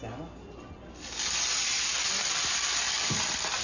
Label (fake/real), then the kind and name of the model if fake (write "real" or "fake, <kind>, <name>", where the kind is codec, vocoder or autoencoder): real